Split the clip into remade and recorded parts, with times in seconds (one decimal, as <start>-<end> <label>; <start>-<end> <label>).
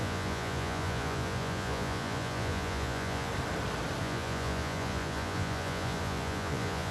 0.0-3.3 remade; 3.3-4.0 recorded; 4.0-6.9 remade